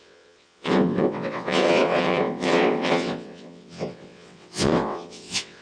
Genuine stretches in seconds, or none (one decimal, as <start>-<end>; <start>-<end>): none